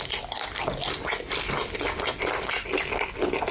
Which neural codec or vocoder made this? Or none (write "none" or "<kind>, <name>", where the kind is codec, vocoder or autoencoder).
none